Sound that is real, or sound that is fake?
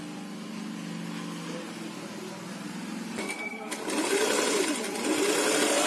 real